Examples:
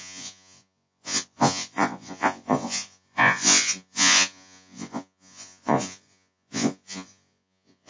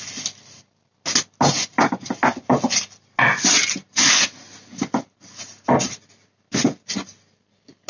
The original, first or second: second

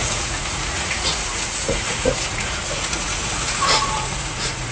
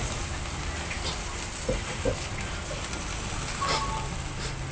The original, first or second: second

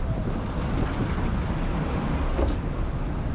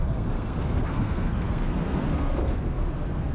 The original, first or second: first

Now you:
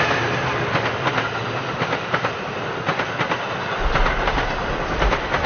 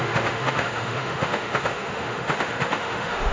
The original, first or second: first